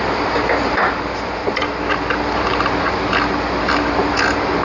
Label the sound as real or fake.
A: real